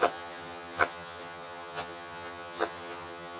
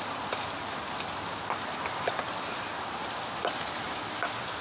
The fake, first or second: first